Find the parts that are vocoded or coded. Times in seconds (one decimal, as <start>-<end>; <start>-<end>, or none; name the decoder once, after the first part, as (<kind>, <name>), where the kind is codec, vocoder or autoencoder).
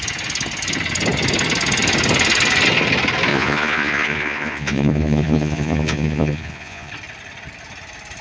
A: 3.3-6.9 (vocoder, Vocos)